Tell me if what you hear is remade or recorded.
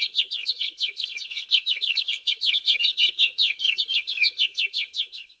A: remade